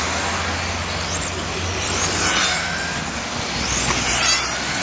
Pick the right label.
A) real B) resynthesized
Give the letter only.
A